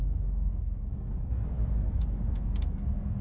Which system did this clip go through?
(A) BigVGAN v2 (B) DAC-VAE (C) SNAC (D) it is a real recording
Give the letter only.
C